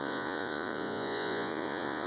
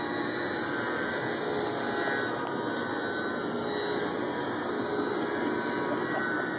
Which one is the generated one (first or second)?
first